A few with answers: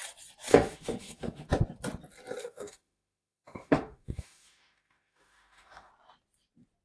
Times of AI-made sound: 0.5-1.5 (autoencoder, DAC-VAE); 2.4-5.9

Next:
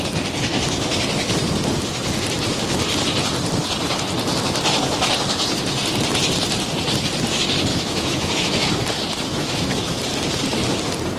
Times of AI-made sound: 7.7-8.7 (autoencoder, DAC-VAE); 9.3-10.0

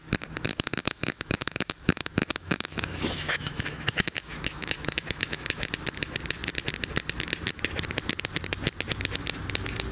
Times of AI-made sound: 0.5-5.7 (autoencoder, DAC-VAE)

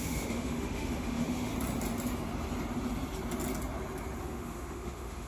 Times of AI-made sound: 0.0-1.5 (autoencoder, DAC-VAE); 4.2-5.3

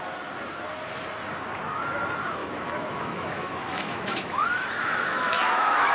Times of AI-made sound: 2.4-5.9 (autoencoder, DAC-VAE)

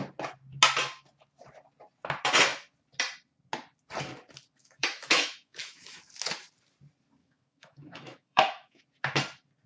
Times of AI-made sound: 4.6-6.0 (autoencoder, DAC-VAE); 7.2-8.8

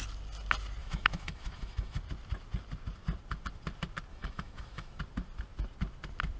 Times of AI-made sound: 0.8-2.0 (autoencoder, DAC-VAE); 4.1-5.0